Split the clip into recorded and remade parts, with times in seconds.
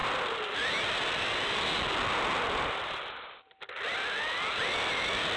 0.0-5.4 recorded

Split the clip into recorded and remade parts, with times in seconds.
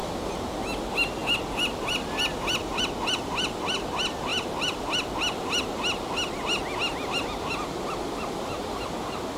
0.0-0.5 remade; 0.5-9.4 recorded